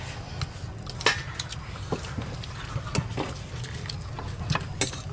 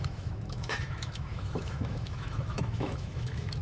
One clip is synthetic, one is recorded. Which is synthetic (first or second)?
second